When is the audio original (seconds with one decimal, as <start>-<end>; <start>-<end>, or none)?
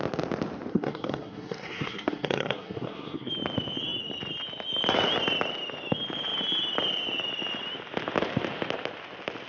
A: 0.0-0.7; 3.3-9.5